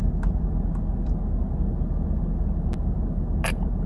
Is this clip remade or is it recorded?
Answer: recorded